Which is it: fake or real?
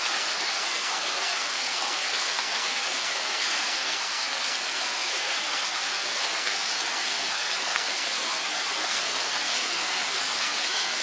fake